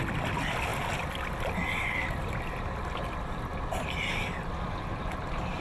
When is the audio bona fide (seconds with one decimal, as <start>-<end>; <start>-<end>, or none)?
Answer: 0.0-5.6